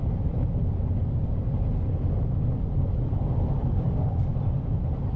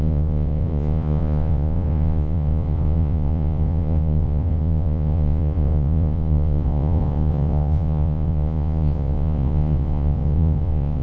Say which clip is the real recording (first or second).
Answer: first